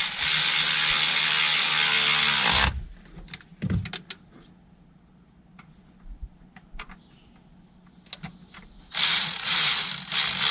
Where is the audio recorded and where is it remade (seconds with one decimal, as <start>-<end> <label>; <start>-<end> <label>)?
0.0-9.1 recorded; 9.1-9.9 remade; 9.9-10.5 recorded